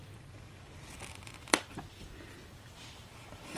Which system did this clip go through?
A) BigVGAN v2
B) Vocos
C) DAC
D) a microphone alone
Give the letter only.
A